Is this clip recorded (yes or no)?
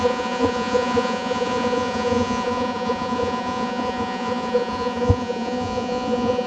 no